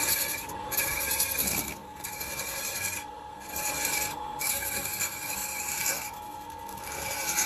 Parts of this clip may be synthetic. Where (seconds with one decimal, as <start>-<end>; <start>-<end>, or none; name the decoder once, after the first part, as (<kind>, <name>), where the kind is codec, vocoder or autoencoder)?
0.0-7.5 (codec, SNAC)